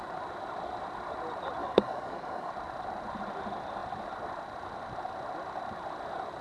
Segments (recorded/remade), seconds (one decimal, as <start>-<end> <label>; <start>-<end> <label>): 0.0-1.6 recorded; 1.6-2.5 remade; 2.5-6.4 recorded

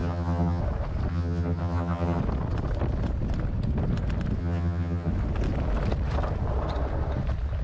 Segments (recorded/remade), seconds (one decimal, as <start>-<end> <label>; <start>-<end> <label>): 0.0-0.6 remade; 0.6-1.1 recorded; 1.1-2.2 remade; 2.2-4.4 recorded; 4.4-5.1 remade; 5.1-7.6 recorded

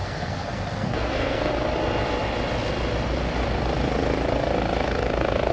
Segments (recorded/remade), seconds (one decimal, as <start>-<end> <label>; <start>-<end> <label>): 0.0-1.5 remade; 1.5-5.5 recorded

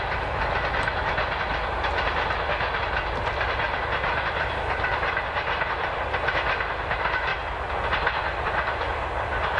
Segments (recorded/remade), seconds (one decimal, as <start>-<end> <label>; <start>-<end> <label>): 0.0-9.6 recorded

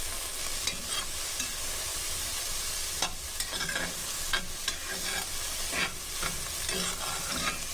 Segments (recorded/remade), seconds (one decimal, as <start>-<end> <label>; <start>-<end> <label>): 0.0-7.7 recorded